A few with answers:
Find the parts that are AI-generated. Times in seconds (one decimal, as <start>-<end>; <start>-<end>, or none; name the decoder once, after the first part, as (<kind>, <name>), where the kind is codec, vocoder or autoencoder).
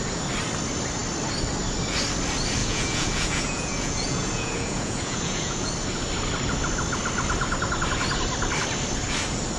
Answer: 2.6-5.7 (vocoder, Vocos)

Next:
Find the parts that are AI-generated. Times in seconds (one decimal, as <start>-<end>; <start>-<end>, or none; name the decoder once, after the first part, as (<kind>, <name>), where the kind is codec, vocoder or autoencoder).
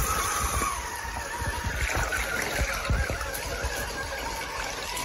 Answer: 0.0-1.6 (vocoder, BigVGAN v2)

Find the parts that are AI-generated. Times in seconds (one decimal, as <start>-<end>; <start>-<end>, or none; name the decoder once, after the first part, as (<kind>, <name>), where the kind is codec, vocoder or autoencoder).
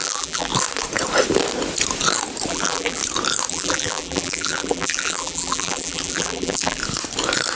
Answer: 0.0-0.5 (vocoder, BigVGAN v2); 2.5-3.0; 3.5-6.8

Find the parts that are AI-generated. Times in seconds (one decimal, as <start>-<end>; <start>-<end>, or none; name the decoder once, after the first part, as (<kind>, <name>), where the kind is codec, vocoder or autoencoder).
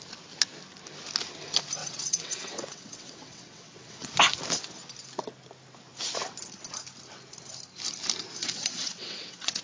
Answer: 1.8-4.1 (vocoder, WaveNeXt); 8.4-9.6